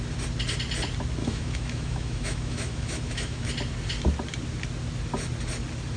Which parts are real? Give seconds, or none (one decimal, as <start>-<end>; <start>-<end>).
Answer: 0.0-1.2; 3.5-6.0